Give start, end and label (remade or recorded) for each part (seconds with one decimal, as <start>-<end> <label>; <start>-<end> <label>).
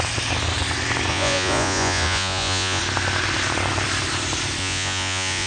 0.0-1.1 recorded; 1.1-2.8 remade; 2.8-4.6 recorded; 4.6-5.5 remade